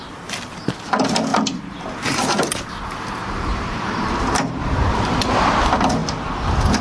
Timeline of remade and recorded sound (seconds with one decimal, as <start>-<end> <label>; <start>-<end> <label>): 0.0-1.3 recorded; 1.3-2.7 remade; 2.7-3.2 recorded; 3.2-5.2 remade; 5.2-6.8 recorded